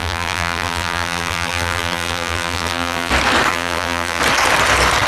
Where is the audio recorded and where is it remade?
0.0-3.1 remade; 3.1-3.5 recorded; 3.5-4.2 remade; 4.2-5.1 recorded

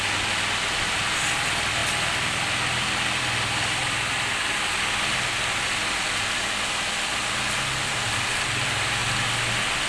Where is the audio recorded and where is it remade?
0.0-9.9 recorded

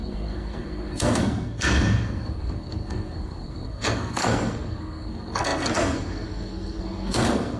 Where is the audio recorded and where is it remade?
0.0-7.6 remade

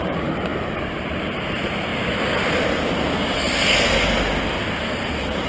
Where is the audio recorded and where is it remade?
0.0-1.9 remade; 1.9-5.1 recorded; 5.1-5.5 remade

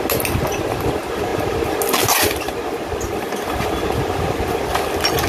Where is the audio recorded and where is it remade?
0.0-5.3 recorded

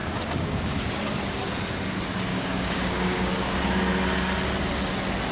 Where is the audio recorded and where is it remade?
0.0-0.7 remade; 0.7-2.3 recorded; 2.3-3.6 remade; 3.6-5.3 recorded

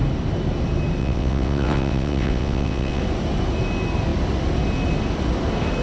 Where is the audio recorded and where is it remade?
0.0-1.0 recorded; 1.0-3.0 remade; 3.0-5.8 recorded